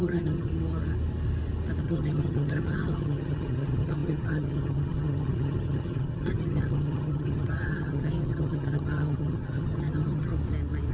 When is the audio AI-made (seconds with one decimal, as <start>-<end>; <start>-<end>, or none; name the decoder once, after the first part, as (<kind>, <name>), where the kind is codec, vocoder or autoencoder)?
0.0-0.5 (vocoder, HiFi-GAN); 1.8-10.3